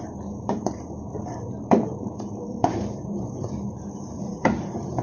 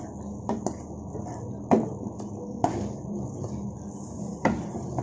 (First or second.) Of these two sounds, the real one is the second